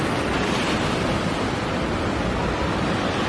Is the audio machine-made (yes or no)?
no